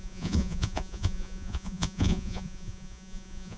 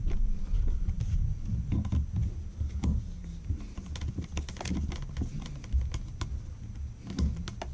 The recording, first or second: second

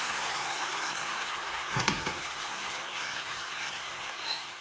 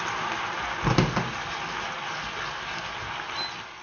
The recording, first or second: second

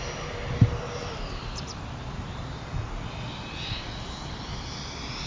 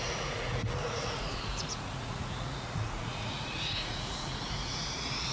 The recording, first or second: first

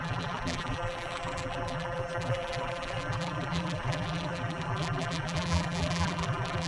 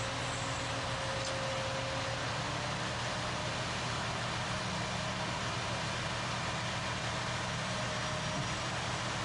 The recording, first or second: second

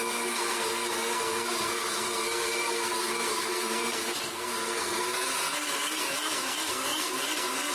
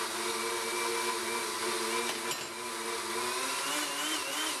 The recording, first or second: second